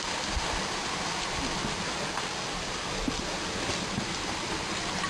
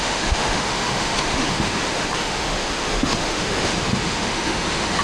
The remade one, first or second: second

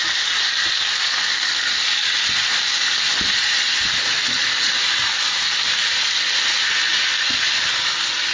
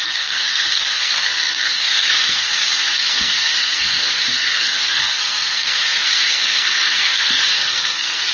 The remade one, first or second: second